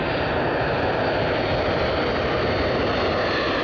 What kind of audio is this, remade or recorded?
recorded